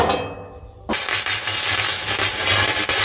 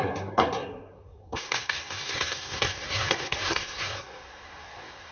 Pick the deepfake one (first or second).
second